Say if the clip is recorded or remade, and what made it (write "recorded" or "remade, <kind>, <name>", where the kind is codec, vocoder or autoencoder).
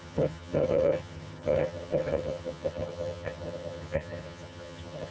remade, vocoder, HiFi-GAN